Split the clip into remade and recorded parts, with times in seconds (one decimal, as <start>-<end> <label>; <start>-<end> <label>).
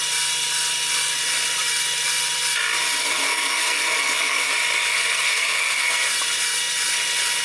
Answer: 0.0-3.0 recorded; 3.0-4.5 remade; 4.5-4.9 recorded; 4.9-6.1 remade; 6.1-7.4 recorded